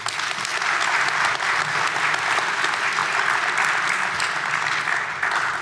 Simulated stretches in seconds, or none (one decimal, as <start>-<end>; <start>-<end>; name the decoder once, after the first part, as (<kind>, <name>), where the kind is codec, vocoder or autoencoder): none